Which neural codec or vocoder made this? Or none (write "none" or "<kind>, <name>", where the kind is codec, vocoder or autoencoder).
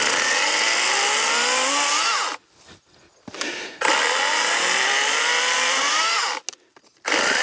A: none